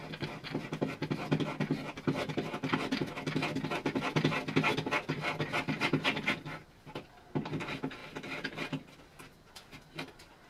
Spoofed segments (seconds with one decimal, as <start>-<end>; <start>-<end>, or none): none